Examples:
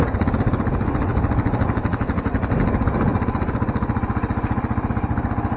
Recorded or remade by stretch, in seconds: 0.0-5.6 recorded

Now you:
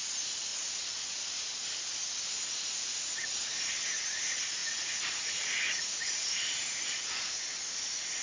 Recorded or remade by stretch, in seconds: 0.0-0.5 recorded; 0.5-1.3 remade; 1.3-4.6 recorded; 4.6-7.4 remade; 7.4-8.2 recorded